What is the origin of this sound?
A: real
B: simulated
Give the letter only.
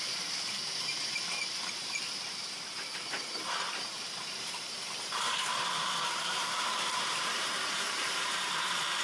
B